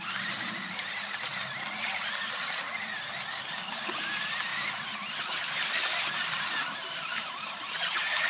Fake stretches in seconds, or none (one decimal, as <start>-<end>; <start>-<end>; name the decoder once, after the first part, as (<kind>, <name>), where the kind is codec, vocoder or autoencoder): 3.3-3.9 (codec, DAC)